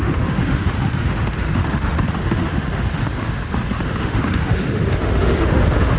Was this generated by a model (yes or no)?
yes